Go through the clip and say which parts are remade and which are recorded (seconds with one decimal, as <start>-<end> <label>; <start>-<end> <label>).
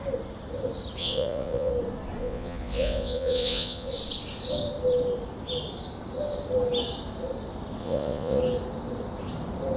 0.0-1.0 recorded; 1.0-1.7 remade; 1.7-2.2 recorded; 2.2-3.9 remade; 3.9-7.8 recorded; 7.8-8.4 remade; 8.4-9.8 recorded